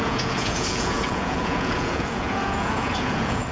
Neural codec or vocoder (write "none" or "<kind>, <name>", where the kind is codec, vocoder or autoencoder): vocoder, Vocos